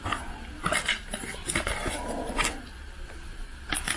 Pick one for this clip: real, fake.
real